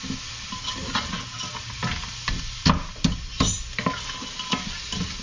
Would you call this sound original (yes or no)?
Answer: yes